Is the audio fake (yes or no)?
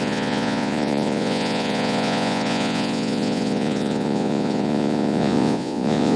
yes